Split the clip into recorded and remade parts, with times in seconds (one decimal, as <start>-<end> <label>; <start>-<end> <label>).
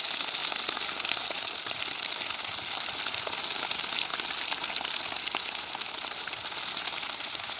0.0-7.6 recorded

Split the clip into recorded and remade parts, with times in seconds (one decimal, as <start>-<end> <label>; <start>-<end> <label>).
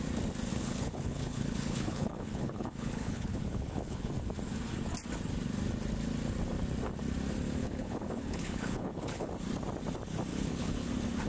0.0-0.5 recorded; 0.5-4.1 remade; 4.1-7.6 recorded; 7.6-9.3 remade; 9.3-10.3 recorded; 10.3-10.9 remade; 10.9-11.3 recorded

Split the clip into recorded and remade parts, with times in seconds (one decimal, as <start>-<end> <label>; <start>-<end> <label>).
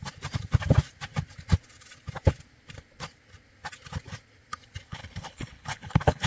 0.0-4.9 recorded; 4.9-6.3 remade